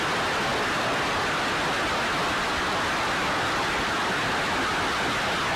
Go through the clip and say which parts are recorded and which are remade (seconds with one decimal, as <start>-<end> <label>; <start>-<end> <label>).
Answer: 0.0-5.6 recorded